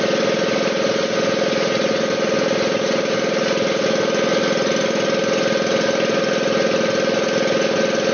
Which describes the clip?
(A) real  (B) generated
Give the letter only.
A